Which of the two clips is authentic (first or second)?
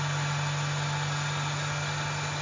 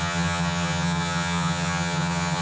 first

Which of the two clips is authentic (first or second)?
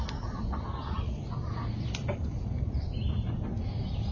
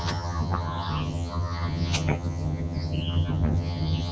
first